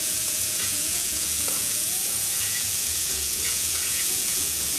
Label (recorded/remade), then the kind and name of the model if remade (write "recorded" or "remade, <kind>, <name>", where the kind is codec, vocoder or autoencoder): remade, vocoder, Vocos